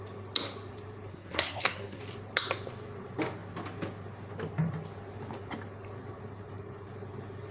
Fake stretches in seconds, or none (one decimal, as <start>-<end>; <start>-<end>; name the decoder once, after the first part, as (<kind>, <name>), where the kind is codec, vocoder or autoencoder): 1.1-2.0 (codec, SNAC)

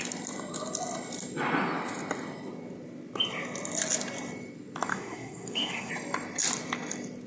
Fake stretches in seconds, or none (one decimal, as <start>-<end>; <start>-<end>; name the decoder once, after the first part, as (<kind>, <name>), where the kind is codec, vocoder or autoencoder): 4.9-5.9 (codec, SNAC)

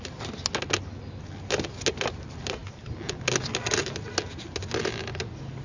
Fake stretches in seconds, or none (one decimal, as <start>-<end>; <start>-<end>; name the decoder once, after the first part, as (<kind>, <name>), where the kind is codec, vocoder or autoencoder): none

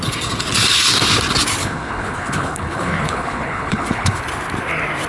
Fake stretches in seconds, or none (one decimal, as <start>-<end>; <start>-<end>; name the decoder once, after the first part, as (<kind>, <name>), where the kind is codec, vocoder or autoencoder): 1.6-4.2 (codec, HILCodec)

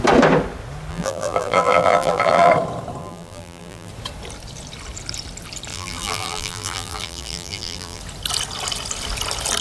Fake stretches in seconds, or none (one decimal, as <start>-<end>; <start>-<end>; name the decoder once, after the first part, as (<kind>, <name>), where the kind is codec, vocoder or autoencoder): 0.9-2.5 (vocoder, BigVGAN v2); 3.0-3.9; 5.7-8.0